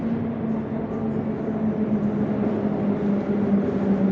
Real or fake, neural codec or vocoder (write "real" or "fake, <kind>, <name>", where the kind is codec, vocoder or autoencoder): real